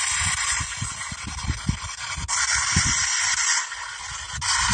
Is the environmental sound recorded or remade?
recorded